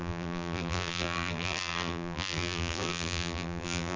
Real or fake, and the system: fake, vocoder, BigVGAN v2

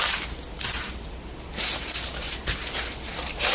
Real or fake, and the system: fake, vocoder, BigVGAN v2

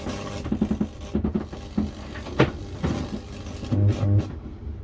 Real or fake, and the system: real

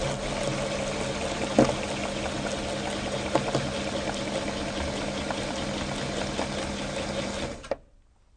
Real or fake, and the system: real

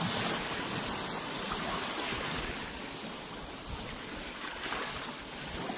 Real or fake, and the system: real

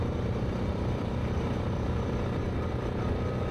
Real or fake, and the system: fake, vocoder, BigVGAN v2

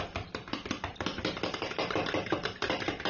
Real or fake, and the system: fake, vocoder, BigVGAN v2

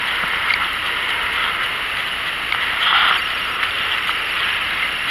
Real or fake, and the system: fake, vocoder, BigVGAN v2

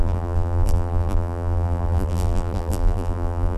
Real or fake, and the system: fake, vocoder, BigVGAN v2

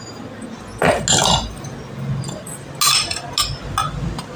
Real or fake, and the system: real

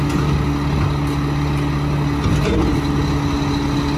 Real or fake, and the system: real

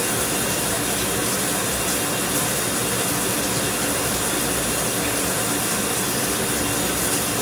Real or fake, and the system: real